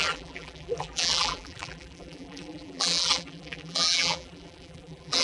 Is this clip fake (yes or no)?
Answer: yes